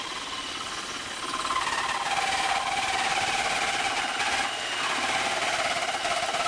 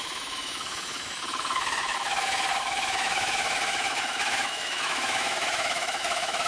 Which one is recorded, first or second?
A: first